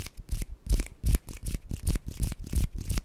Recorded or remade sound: recorded